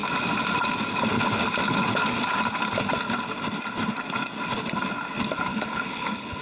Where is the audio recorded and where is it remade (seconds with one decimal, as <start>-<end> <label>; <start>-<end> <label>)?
0.0-5.5 recorded; 5.5-6.4 remade